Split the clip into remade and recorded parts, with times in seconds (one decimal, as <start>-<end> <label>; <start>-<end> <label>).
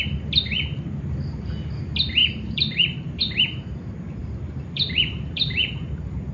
0.0-2.2 recorded; 2.2-3.2 remade; 3.2-4.2 recorded; 4.2-5.8 remade; 5.8-6.3 recorded